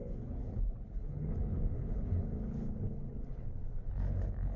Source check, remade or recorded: remade